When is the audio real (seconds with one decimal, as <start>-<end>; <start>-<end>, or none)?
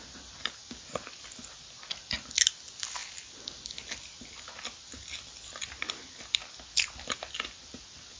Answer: 0.0-8.2